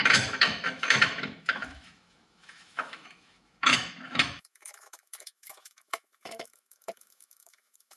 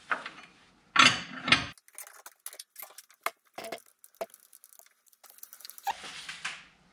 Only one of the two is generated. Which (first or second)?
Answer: first